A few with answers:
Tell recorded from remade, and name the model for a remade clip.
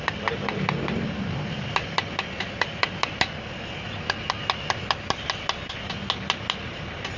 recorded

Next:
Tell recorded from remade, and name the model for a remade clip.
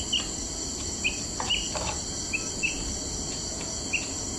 recorded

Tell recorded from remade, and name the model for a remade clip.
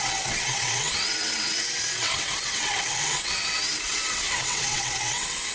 remade, vocoder, WaveNeXt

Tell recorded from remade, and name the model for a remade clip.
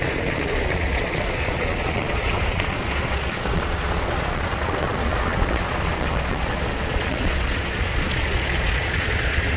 remade, vocoder, Vocos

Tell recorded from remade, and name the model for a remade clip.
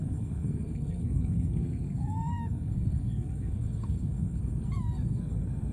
remade, codec, SNAC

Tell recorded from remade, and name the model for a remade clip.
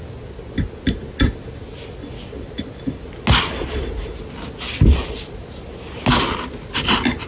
recorded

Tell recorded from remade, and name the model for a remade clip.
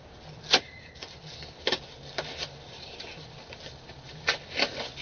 recorded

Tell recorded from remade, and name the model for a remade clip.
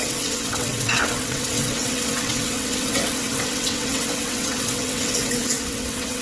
remade, vocoder, WaveNeXt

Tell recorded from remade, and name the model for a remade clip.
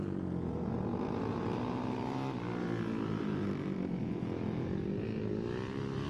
recorded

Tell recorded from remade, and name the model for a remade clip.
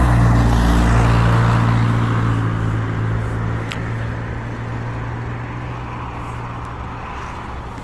recorded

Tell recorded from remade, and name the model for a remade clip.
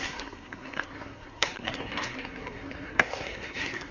remade, codec, SNAC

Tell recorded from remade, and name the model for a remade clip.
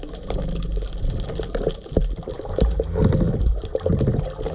recorded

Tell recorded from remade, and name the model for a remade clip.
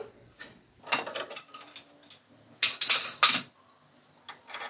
recorded